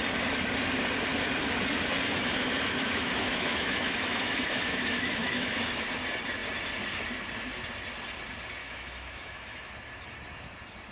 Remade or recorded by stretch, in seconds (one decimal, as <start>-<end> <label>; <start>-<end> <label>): 0.0-2.2 recorded; 2.2-5.8 remade; 5.8-8.6 recorded; 8.6-9.7 remade; 9.7-10.9 recorded